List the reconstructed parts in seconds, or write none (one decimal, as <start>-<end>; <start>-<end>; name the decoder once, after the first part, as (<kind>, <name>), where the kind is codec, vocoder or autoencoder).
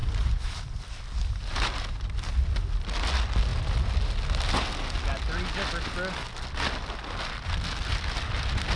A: none